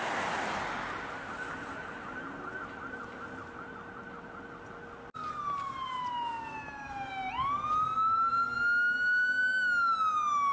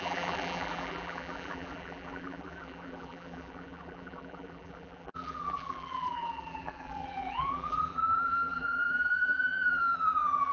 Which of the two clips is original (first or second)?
first